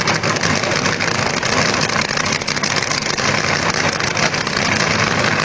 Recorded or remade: recorded